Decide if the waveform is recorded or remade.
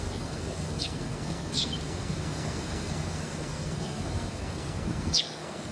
remade